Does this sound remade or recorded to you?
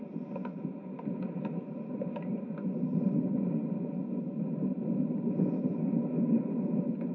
recorded